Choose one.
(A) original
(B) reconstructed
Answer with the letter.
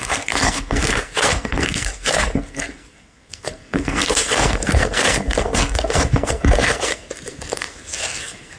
B